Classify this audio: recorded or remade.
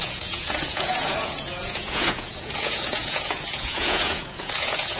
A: remade